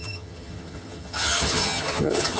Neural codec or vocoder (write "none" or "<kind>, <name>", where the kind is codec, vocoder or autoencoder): vocoder, HiFi-GAN